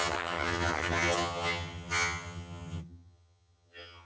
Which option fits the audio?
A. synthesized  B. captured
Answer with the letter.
A